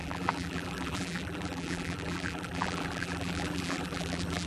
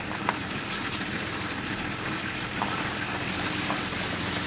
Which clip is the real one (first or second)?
second